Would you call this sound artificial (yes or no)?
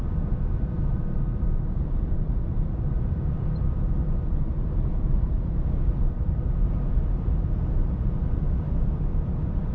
yes